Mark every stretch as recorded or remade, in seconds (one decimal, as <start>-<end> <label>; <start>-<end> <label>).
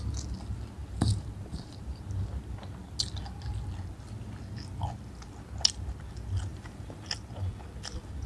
0.0-0.8 recorded; 0.8-2.0 remade; 2.0-6.5 recorded; 6.5-7.1 remade; 7.1-8.3 recorded